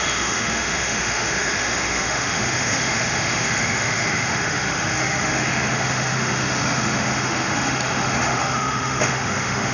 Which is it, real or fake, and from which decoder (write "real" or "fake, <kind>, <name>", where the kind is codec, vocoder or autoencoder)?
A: fake, autoencoder, DAC-VAE